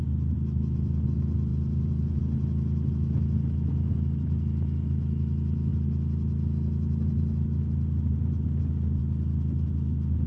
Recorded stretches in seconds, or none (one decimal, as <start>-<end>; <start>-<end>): 0.0-1.5; 2.2-10.3

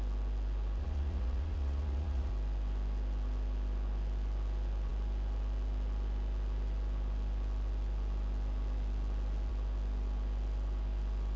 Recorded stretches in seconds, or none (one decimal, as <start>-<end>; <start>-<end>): 0.0-0.8; 2.3-11.4

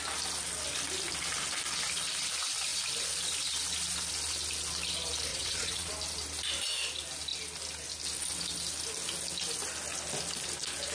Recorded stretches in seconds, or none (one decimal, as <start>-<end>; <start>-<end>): 0.0-5.3; 5.9-10.9

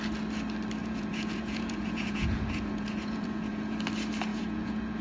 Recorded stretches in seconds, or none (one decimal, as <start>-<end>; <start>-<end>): 0.0-0.8; 3.8-4.3

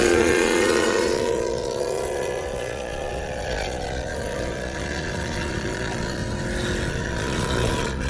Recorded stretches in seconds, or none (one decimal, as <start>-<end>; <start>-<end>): 6.2-6.9

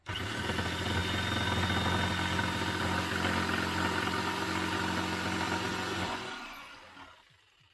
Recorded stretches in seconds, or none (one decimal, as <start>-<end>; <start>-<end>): 0.0-5.7; 6.8-7.7

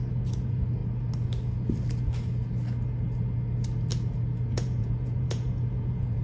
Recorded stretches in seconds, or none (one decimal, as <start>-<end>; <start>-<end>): 0.8-4.5

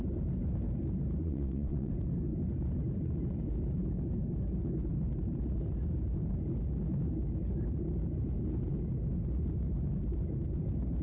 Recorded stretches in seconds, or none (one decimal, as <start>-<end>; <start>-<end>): 0.0-1.2; 1.9-11.0